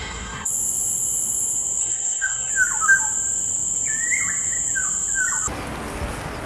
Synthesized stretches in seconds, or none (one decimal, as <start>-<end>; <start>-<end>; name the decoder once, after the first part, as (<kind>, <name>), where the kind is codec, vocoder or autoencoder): 0.0-0.5 (codec, SNAC); 1.8-2.5